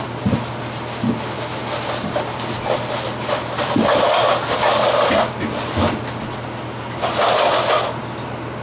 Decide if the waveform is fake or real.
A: real